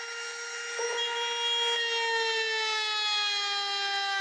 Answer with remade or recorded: recorded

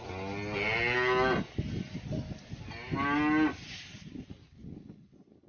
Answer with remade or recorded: recorded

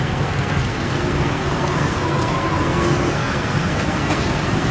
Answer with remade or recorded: remade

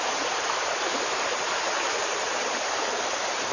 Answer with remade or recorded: remade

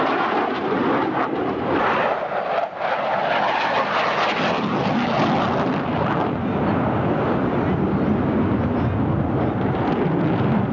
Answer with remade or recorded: recorded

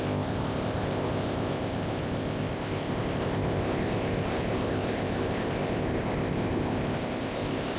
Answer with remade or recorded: remade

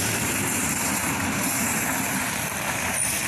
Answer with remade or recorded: remade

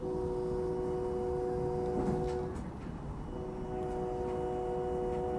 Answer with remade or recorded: recorded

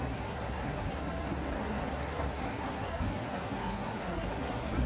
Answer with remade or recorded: remade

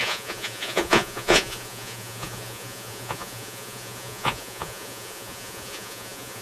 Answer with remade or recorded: remade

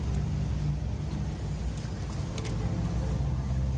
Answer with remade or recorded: recorded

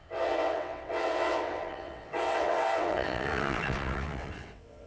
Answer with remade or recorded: remade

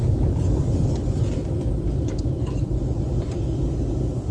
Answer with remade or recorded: recorded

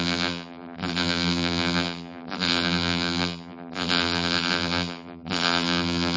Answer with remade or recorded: remade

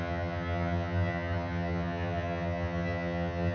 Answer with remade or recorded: remade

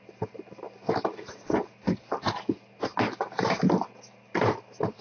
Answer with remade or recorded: recorded